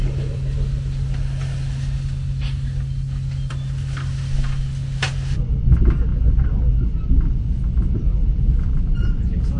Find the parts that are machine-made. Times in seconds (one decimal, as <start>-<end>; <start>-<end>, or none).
none